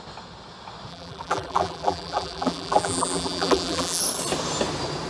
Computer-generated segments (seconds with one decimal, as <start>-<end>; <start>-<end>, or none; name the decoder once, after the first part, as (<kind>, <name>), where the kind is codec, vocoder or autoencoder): 0.9-4.0 (vocoder, BigVGAN v2)